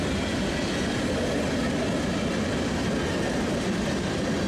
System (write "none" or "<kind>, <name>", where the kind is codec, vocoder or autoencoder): none